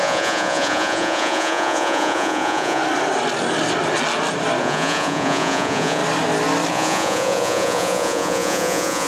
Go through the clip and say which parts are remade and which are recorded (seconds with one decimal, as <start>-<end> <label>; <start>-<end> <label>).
0.0-2.8 remade; 2.8-4.6 recorded; 4.6-6.0 remade; 6.0-6.7 recorded; 6.7-9.1 remade